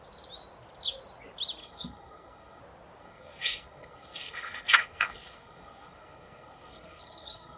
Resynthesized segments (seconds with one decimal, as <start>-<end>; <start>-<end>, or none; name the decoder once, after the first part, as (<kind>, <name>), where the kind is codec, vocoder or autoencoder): 1.6-2.6 (codec, SNAC); 3.0-7.6